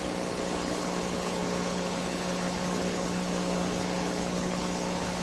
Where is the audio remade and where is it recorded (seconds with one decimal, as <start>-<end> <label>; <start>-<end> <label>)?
0.0-5.2 remade